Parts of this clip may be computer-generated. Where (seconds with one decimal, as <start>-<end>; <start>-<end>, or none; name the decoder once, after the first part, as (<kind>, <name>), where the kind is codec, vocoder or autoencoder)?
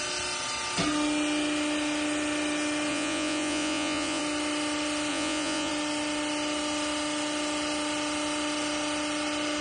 2.9-4.2 (vocoder, Vocos); 5.1-5.7